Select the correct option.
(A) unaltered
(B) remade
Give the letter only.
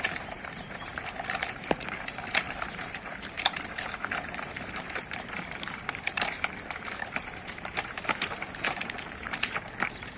B